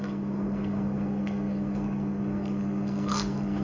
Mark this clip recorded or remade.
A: remade